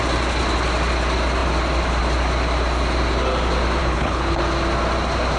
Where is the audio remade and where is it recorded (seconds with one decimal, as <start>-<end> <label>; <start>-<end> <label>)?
0.0-3.8 recorded; 3.8-4.4 remade; 4.4-5.4 recorded